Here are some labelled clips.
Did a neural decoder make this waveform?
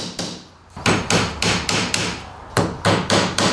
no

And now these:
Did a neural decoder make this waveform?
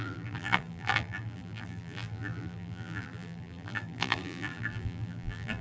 yes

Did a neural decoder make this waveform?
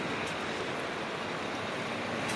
no